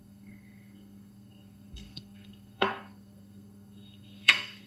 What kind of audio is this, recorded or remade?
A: remade